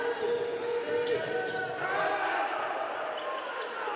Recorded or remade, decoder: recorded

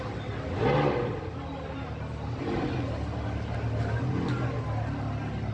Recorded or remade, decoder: recorded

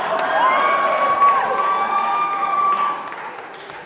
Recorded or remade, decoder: recorded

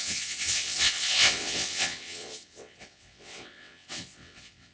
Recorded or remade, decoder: remade, vocoder, WaveNeXt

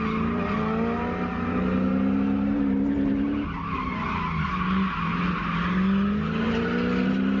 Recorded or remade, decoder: recorded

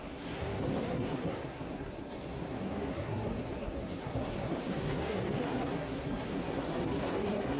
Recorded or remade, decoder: remade, codec, SNAC